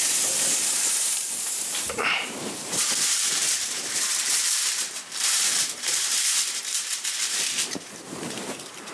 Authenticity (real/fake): fake